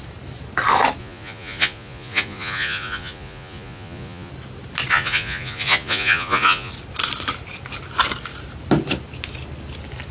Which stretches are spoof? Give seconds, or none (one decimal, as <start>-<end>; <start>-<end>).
1.0-4.3; 4.9-6.7